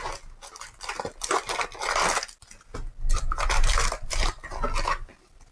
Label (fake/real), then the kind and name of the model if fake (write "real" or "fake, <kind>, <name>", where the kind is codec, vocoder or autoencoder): real